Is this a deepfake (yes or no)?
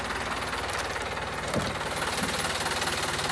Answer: no